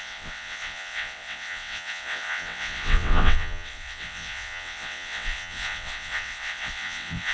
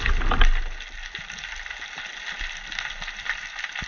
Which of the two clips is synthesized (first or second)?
first